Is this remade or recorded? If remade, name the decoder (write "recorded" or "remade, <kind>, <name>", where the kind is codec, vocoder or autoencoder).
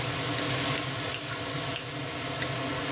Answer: recorded